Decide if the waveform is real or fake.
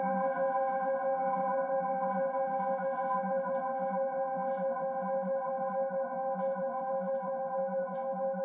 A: fake